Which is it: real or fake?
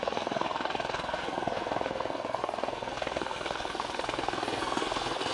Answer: fake